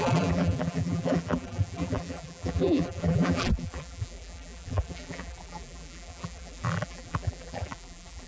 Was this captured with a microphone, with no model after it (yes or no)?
no